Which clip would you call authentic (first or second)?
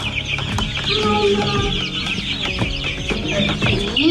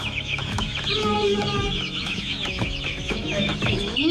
first